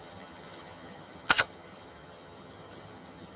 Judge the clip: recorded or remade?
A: remade